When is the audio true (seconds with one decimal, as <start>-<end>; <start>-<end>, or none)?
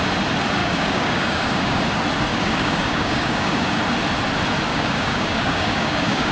0.0-0.6; 1.8-2.3; 3.8-4.7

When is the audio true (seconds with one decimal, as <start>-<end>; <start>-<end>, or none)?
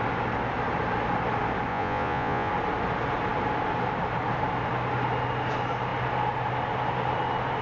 0.0-1.7; 2.5-7.6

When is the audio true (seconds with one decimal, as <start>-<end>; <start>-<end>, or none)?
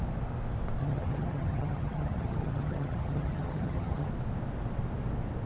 0.0-0.8; 4.1-5.5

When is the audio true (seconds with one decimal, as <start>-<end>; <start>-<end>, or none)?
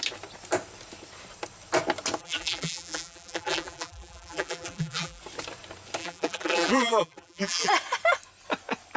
0.0-2.2; 5.2-6.0; 7.7-9.0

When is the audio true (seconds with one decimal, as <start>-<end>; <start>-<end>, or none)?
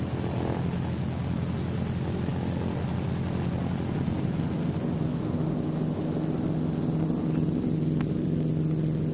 0.0-9.1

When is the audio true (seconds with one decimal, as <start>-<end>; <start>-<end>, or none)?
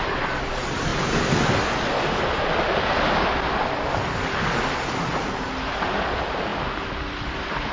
0.0-7.7